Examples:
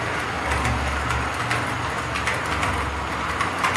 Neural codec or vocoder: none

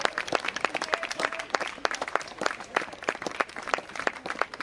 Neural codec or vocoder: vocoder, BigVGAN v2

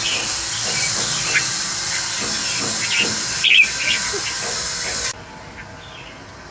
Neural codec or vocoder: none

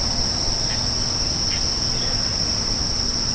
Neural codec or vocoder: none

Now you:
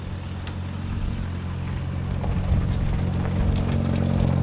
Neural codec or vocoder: none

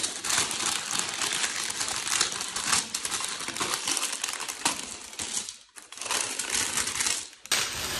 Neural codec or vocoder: none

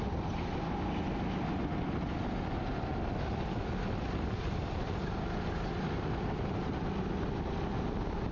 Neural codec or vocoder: none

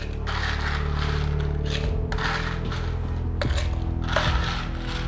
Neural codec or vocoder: none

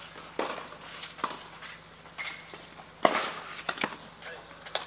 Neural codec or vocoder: none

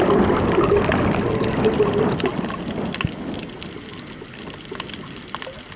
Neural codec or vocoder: none